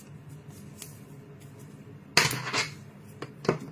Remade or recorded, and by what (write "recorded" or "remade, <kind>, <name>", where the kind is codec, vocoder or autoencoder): recorded